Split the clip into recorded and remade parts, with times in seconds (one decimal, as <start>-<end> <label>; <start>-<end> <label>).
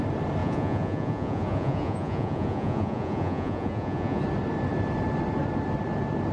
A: 0.0-0.4 recorded; 0.4-4.2 remade; 4.2-6.3 recorded